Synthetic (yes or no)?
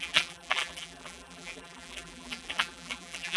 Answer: yes